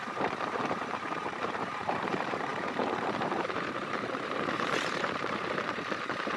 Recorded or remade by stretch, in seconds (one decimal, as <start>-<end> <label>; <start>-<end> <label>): 0.0-6.4 remade